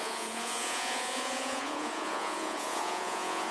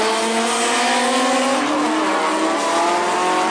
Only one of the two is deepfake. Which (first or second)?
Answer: first